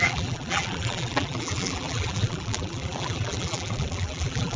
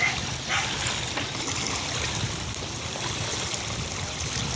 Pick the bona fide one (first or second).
second